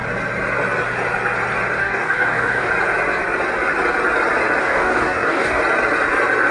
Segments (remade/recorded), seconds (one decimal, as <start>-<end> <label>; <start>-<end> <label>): 0.0-1.8 recorded; 1.8-2.7 remade; 2.7-4.6 recorded; 4.6-5.6 remade; 5.6-6.5 recorded